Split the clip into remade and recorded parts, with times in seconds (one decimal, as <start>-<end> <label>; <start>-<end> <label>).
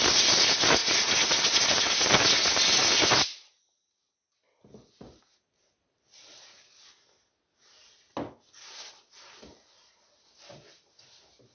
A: 0.0-11.5 recorded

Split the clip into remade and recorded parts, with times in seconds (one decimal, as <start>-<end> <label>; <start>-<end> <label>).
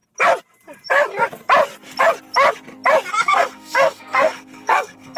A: 0.0-3.1 recorded; 3.1-5.2 remade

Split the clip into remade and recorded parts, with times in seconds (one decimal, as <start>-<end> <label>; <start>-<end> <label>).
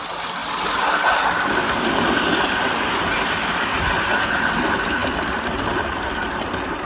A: 0.0-6.8 recorded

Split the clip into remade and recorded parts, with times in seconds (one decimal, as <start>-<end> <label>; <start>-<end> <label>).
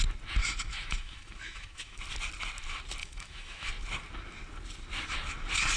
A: 0.0-0.4 recorded; 0.4-2.0 remade; 2.0-3.0 recorded; 3.0-3.7 remade; 3.7-5.8 recorded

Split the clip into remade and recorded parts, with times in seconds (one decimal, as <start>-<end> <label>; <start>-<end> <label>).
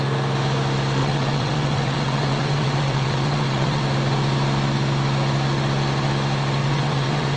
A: 0.0-1.0 recorded; 1.0-3.8 remade; 3.8-6.6 recorded; 6.6-7.4 remade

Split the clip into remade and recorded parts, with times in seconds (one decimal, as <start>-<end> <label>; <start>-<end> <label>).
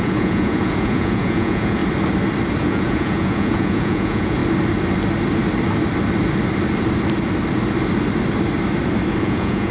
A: 0.0-1.8 remade; 1.8-2.6 recorded; 2.6-4.4 remade; 4.4-9.2 recorded; 9.2-9.7 remade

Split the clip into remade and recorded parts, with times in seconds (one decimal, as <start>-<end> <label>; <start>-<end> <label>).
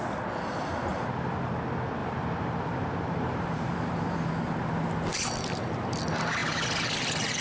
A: 0.0-0.9 recorded; 0.9-1.5 remade; 1.5-2.0 recorded; 2.0-4.3 remade; 4.3-7.4 recorded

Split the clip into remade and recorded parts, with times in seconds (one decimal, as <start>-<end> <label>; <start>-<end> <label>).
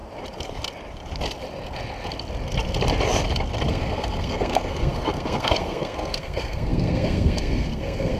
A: 0.0-3.7 recorded; 3.7-8.2 remade